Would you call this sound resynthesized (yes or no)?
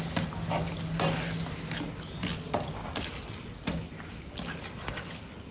no